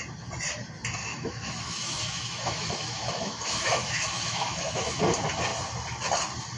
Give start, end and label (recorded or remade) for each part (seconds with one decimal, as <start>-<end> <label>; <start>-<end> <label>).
0.0-1.0 recorded; 1.0-5.0 remade; 5.0-6.6 recorded